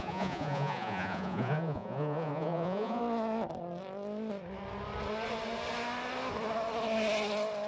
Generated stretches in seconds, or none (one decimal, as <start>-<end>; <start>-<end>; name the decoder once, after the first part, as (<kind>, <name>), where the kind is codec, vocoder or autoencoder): 0.0-3.0 (vocoder, Vocos)